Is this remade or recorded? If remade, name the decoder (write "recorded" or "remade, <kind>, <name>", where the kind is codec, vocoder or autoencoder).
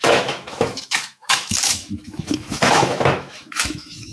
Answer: remade, autoencoder, DAC-VAE